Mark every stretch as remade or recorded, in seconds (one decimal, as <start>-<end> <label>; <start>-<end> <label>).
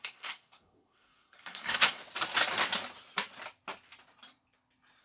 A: 0.0-2.0 remade; 2.0-5.0 recorded